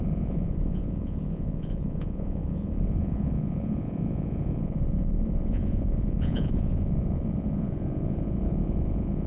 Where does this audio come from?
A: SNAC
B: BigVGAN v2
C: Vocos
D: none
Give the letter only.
C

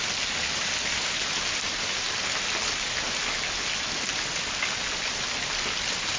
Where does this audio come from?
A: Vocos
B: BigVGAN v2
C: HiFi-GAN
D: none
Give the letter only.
D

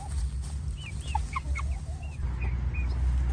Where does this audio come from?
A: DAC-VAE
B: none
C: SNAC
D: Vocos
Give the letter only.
B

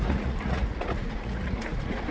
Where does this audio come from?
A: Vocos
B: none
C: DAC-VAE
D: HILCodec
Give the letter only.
A